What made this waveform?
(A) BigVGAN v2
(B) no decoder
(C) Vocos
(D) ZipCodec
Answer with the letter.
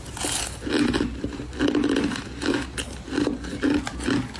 B